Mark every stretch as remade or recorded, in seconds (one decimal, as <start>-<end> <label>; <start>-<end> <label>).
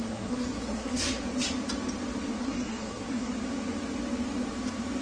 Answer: 0.0-1.1 remade; 1.1-2.4 recorded; 2.4-3.3 remade; 3.3-5.0 recorded